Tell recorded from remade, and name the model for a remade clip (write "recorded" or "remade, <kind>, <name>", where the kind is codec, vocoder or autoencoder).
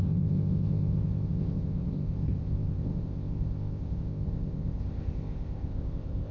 remade, codec, ZipCodec